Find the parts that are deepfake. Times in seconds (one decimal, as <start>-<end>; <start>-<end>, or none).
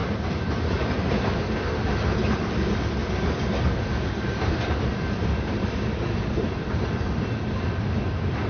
0.0-1.3; 3.0-6.9